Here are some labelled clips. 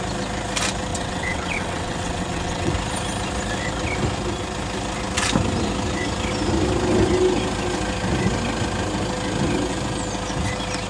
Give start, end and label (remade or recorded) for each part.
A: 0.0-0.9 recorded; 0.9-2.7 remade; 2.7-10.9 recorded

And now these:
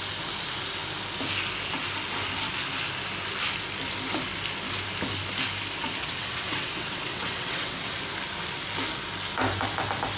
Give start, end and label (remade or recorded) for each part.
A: 0.0-6.0 recorded; 6.0-8.0 remade; 8.0-10.2 recorded

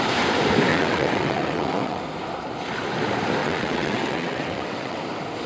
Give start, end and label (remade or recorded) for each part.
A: 0.0-0.7 recorded; 0.7-2.0 remade; 2.0-3.4 recorded; 3.4-5.0 remade; 5.0-5.5 recorded

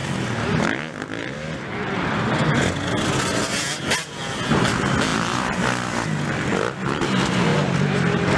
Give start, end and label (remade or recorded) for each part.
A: 0.0-8.4 recorded